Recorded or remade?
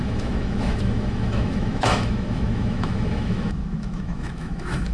remade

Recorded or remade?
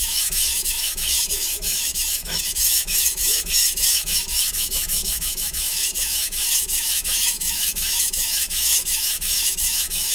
remade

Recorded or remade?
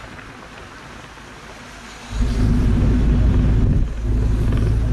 recorded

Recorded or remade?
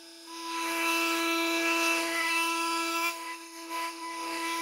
remade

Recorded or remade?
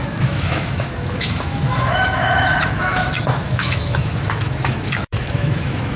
remade